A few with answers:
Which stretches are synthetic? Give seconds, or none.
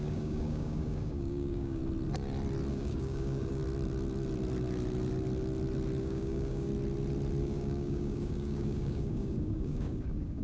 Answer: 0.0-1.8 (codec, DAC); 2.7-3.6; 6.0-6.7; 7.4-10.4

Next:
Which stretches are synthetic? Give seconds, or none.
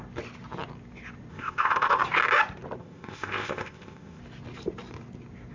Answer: 1.3-2.0 (codec, ZipCodec); 2.8-4.2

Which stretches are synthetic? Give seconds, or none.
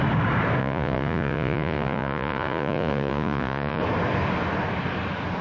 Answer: 0.6-3.8 (vocoder, Vocos)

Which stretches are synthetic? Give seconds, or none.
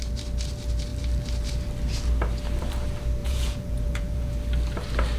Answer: 3.2-4.3 (vocoder, Vocos)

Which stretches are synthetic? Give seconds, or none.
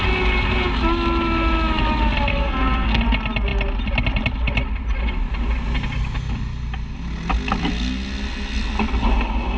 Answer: 2.3-3.0 (codec, SNAC)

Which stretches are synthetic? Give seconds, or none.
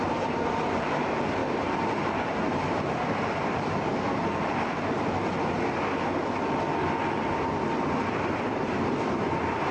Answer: 0.0-3.9 (vocoder, BigVGAN v2); 8.0-9.7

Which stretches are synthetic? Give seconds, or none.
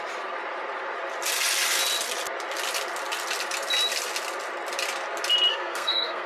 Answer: 5.5-6.3 (codec, SNAC)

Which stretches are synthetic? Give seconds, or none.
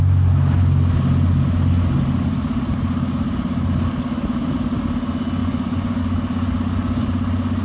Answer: 5.4-6.0 (vocoder, Vocos)